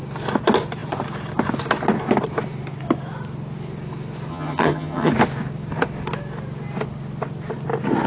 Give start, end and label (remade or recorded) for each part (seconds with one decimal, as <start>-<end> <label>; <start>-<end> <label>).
0.0-4.3 recorded; 4.3-5.1 remade; 5.1-8.1 recorded